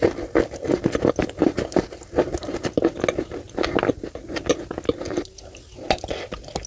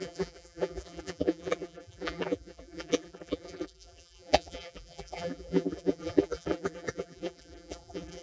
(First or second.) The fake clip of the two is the second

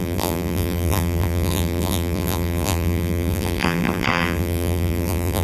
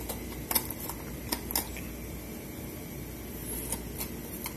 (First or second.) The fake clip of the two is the first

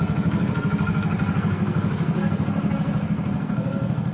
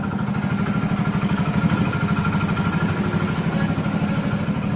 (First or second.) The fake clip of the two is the first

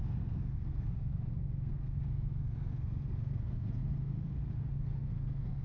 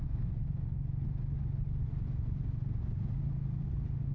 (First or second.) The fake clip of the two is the first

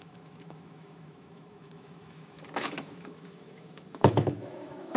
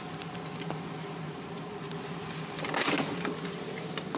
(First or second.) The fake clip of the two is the first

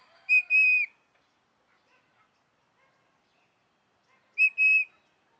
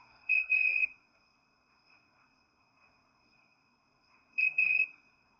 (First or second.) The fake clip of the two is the second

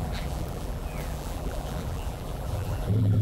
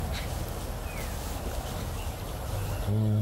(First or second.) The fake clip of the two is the first